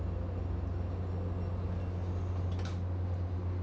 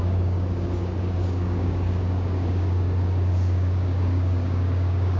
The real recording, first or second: first